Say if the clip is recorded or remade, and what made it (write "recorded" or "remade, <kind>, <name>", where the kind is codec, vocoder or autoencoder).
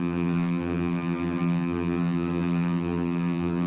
remade, vocoder, BigVGAN v2